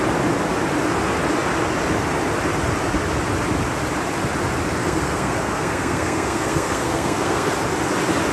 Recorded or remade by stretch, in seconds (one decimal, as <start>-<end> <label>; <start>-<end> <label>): 0.0-4.8 recorded; 4.8-7.5 remade; 7.5-8.3 recorded